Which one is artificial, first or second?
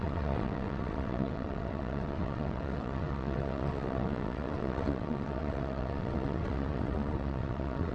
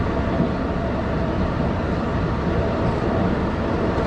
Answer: first